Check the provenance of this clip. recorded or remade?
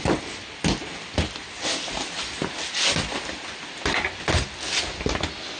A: recorded